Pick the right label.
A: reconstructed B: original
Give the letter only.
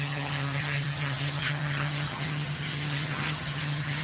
A